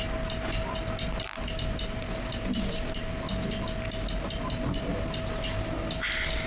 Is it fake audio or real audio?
real